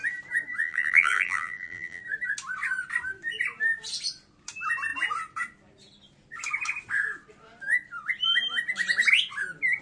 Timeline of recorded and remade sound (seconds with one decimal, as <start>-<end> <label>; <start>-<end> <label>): 0.0-0.6 recorded; 0.6-2.0 remade; 2.0-9.8 recorded